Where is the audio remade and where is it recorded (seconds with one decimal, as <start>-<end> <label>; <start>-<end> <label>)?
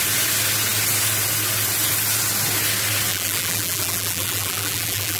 0.0-3.1 recorded; 3.1-5.2 remade